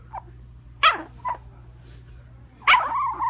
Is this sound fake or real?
real